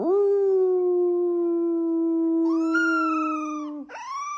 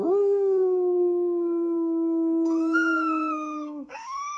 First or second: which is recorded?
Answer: first